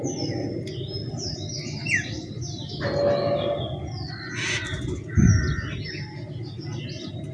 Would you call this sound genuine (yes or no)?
yes